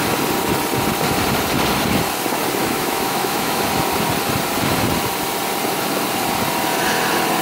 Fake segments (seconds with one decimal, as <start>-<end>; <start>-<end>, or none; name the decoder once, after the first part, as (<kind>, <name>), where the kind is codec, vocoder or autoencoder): 2.6-3.6 (autoencoder, DAC-VAE)